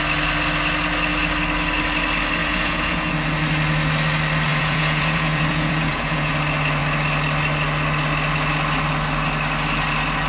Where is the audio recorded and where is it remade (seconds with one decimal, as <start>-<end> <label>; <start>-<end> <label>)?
0.0-2.4 recorded; 2.4-3.1 remade; 3.1-4.5 recorded; 4.5-6.3 remade; 6.3-10.3 recorded